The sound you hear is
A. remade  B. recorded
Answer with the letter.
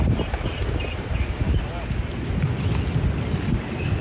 B